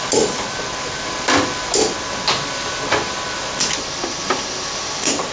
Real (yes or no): yes